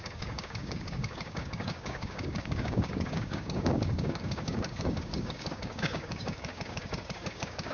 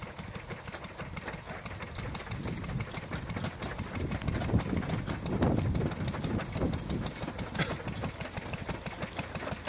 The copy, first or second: first